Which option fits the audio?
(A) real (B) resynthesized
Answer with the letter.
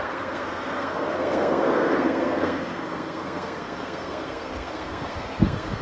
B